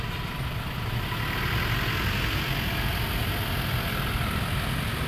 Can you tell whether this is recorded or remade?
recorded